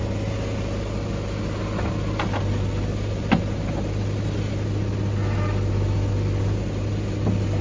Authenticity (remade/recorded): recorded